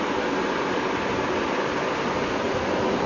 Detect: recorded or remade recorded